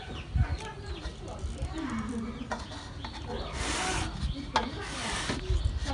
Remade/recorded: recorded